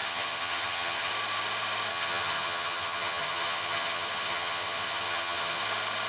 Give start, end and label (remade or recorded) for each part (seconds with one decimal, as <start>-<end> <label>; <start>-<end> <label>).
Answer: 0.0-1.1 remade; 1.1-1.9 recorded; 1.9-5.6 remade; 5.6-6.1 recorded